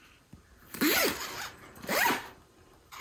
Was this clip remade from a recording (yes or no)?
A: yes